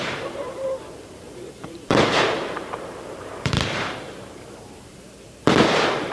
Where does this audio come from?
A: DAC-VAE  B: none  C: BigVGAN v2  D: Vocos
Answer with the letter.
C